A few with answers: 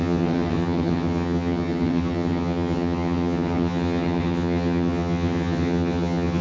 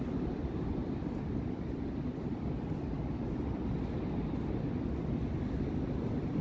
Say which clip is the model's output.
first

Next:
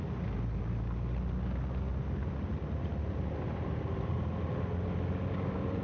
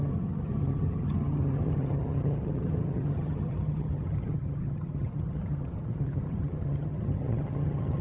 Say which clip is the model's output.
second